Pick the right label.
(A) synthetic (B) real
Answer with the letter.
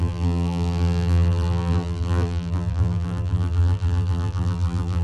A